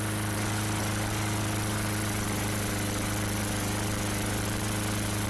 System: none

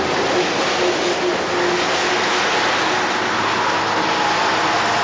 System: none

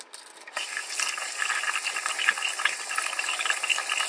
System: none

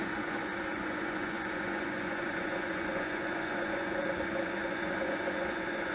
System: vocoder, Vocos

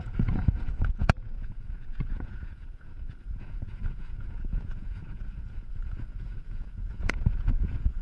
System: vocoder, Vocos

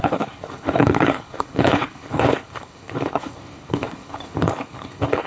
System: codec, HILCodec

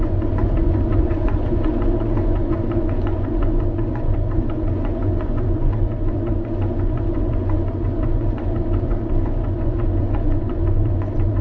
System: vocoder, Vocos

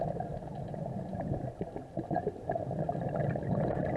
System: none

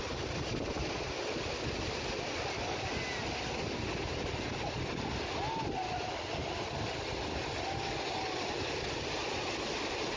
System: none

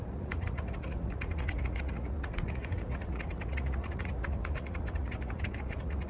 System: vocoder, Vocos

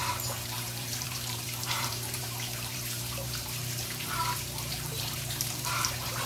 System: vocoder, BigVGAN v2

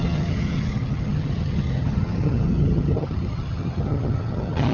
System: vocoder, HiFi-GAN